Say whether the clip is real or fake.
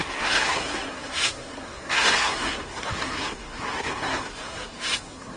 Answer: fake